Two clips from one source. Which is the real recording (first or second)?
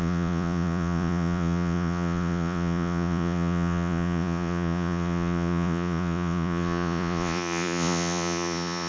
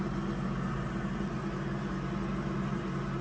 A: second